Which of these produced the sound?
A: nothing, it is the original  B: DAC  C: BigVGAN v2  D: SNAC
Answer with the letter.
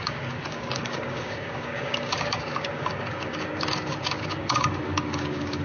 B